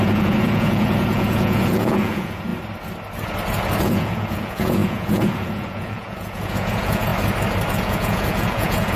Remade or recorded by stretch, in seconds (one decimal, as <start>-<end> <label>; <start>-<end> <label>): 0.0-2.5 remade; 2.5-3.8 recorded; 3.8-7.1 remade; 7.1-7.7 recorded; 7.7-9.0 remade